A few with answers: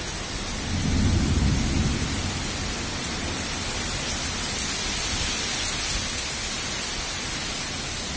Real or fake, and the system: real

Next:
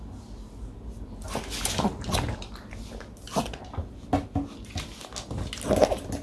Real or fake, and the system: real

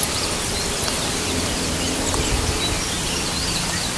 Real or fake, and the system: real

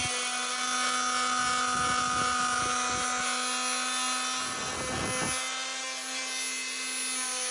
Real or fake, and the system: real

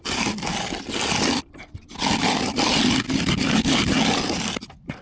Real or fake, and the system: real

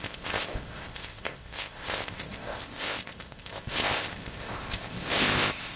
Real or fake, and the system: fake, codec, ZipCodec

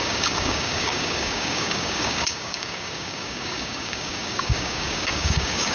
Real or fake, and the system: fake, codec, DAC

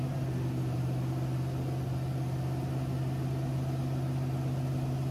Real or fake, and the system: real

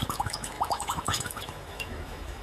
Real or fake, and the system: fake, autoencoder, DAC-VAE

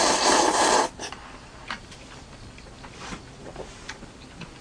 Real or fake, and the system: real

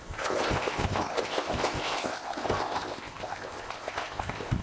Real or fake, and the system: fake, codec, ZipCodec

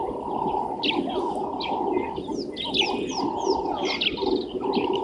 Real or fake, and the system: real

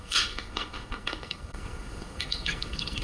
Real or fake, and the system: fake, codec, SNAC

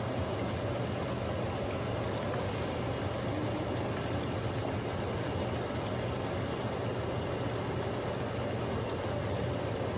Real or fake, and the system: real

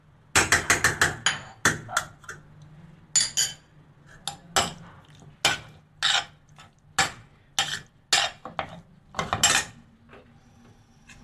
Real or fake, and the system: real